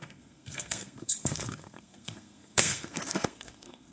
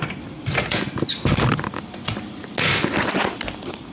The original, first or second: second